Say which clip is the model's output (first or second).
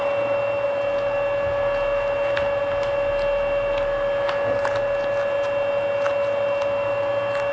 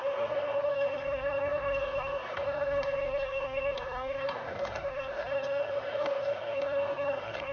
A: second